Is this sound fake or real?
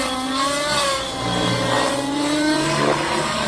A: fake